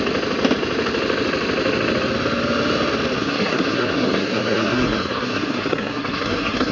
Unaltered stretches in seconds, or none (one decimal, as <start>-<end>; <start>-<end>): 0.0-3.2